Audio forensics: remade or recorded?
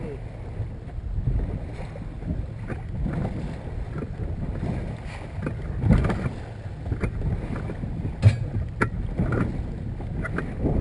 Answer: recorded